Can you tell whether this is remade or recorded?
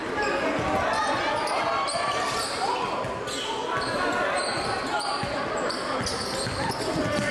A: recorded